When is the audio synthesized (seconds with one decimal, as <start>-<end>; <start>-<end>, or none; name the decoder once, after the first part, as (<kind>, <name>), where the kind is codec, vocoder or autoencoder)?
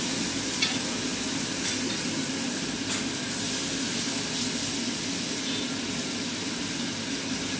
none